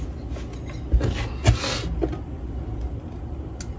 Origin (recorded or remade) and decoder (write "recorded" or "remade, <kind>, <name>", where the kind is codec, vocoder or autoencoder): recorded